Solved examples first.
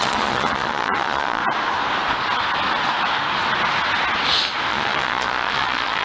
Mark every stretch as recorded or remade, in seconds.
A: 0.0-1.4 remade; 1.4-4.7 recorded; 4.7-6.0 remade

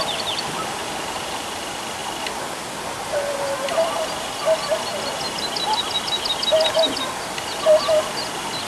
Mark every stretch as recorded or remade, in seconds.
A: 0.0-0.8 recorded; 0.8-1.6 remade; 1.6-8.7 recorded

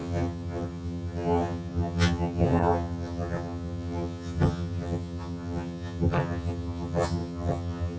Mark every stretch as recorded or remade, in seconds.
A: 0.0-8.0 remade

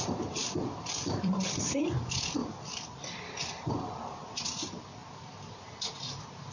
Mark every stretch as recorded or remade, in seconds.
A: 0.0-0.4 recorded; 0.4-2.0 remade; 2.0-2.4 recorded; 2.4-3.7 remade; 3.7-6.5 recorded

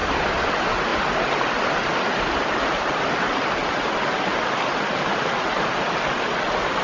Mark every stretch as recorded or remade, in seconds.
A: 0.0-6.8 recorded

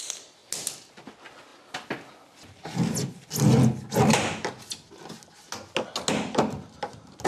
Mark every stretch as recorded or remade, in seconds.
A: 0.0-7.3 recorded

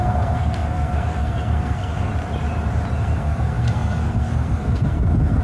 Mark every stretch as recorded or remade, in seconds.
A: 0.0-2.1 remade; 2.1-3.0 recorded; 3.0-5.4 remade

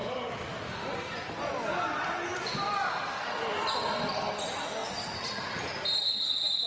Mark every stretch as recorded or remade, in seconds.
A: 0.0-2.3 recorded; 2.3-4.1 remade; 4.1-6.7 recorded